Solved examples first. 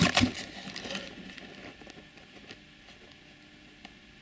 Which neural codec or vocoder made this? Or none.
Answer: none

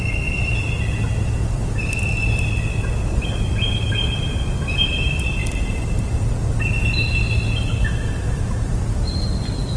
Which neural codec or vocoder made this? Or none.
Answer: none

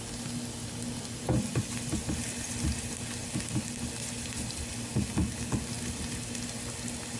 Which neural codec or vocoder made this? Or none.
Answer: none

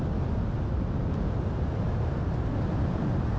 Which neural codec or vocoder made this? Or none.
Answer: none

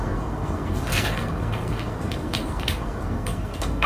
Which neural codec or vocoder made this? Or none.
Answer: codec, SNAC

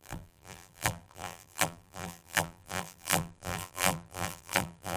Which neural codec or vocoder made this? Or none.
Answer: vocoder, BigVGAN v2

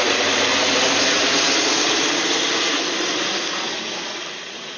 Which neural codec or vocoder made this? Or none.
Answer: none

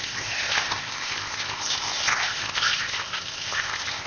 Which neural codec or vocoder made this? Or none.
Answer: codec, ZipCodec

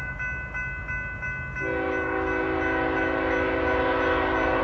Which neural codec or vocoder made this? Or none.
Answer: none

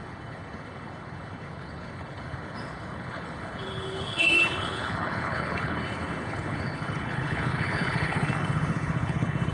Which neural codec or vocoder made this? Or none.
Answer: codec, HILCodec